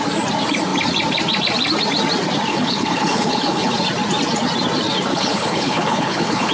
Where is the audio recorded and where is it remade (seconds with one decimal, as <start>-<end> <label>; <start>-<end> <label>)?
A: 0.0-2.5 recorded; 2.5-3.7 remade; 3.7-5.1 recorded; 5.1-6.5 remade